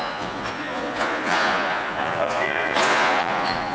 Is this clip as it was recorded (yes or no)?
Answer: no